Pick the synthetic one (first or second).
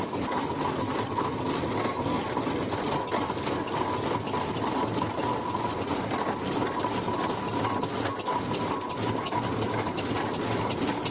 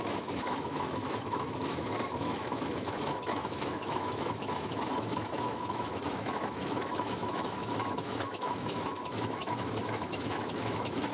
second